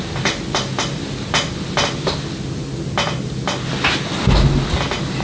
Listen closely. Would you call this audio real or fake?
real